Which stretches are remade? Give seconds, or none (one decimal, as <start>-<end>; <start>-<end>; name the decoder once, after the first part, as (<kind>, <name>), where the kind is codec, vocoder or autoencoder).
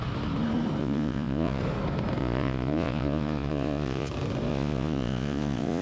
0.8-1.6 (vocoder, Vocos); 2.2-4.1; 4.5-5.8